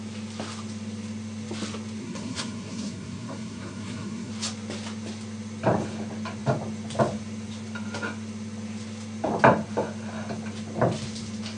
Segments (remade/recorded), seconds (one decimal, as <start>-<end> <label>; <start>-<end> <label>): 0.0-2.0 recorded; 2.0-4.3 remade; 4.3-11.6 recorded